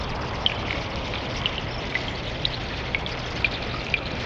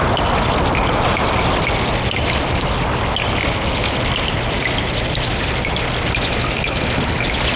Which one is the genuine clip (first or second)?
second